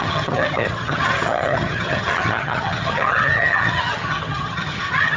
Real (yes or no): no